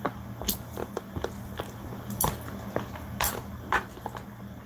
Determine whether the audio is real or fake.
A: real